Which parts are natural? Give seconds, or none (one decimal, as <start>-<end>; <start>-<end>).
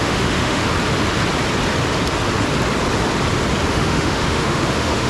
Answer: 0.6-3.7